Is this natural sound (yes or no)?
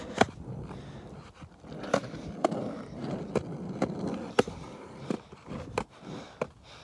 yes